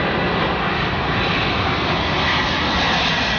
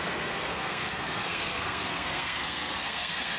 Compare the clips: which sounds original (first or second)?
first